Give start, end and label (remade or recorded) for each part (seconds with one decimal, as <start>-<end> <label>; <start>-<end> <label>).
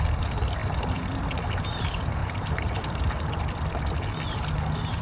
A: 0.0-0.6 recorded; 0.6-1.3 remade; 1.3-2.2 recorded; 2.2-3.4 remade; 3.4-5.0 recorded